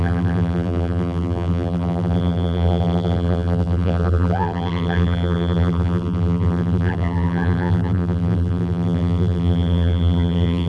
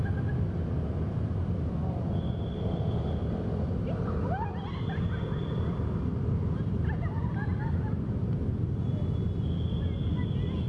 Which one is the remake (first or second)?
first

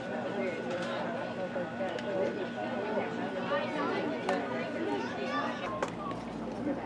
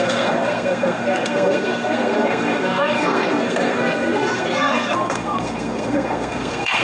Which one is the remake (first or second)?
second